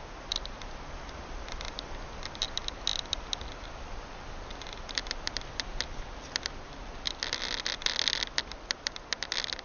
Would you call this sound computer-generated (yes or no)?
no